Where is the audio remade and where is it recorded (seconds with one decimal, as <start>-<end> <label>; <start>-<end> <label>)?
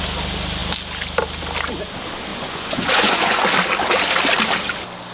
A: 0.0-2.3 recorded; 2.3-3.4 remade; 3.4-5.1 recorded